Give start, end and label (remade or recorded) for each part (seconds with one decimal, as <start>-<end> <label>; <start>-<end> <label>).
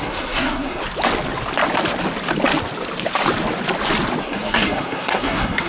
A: 0.0-0.8 remade; 0.8-4.2 recorded; 4.2-5.7 remade